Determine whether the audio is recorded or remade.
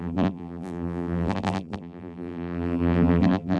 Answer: remade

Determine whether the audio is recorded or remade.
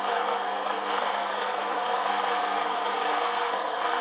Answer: remade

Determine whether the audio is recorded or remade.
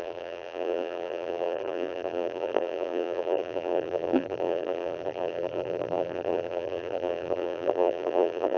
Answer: remade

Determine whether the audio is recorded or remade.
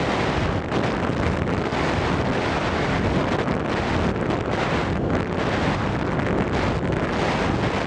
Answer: recorded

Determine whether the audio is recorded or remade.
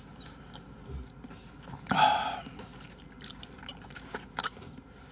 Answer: recorded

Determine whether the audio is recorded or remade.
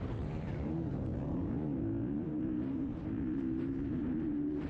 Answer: remade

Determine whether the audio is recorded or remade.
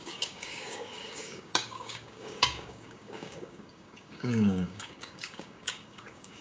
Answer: remade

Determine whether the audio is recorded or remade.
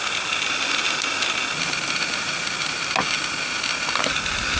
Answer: recorded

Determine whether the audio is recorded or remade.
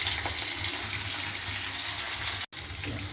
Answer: recorded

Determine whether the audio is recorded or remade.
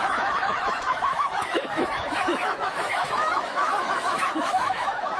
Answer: remade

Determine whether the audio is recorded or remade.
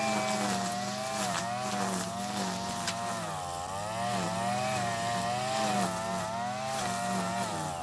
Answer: recorded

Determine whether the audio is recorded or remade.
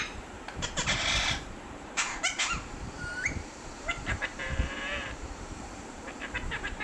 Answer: remade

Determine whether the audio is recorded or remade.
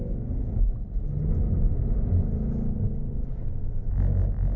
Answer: recorded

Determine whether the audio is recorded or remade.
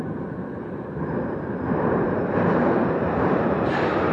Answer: remade